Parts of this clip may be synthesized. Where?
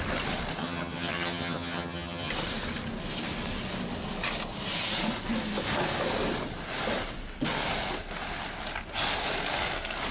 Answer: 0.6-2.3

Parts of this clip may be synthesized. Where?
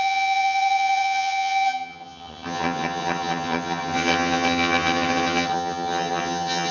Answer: 0.0-6.7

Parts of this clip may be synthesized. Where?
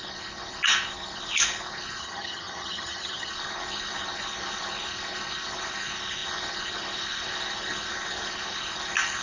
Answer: 2.0-3.3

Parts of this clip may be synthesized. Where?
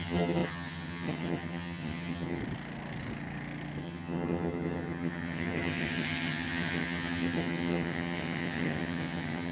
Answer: 0.0-2.4; 3.8-9.5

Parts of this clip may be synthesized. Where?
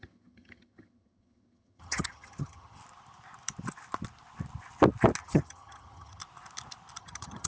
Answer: 0.0-2.8; 5.2-6.2; 7.0-7.5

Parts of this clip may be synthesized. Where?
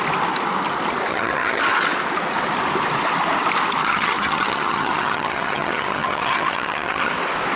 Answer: 1.1-1.6; 3.8-7.1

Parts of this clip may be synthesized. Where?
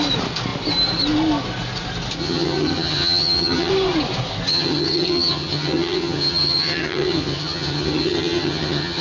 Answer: 2.2-3.7; 4.5-9.0